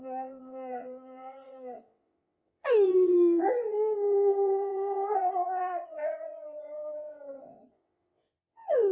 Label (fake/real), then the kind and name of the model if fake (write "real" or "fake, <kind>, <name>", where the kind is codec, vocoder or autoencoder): fake, vocoder, WaveNeXt